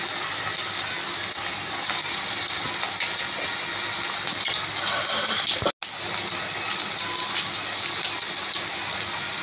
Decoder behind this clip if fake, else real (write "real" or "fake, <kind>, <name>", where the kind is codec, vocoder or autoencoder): real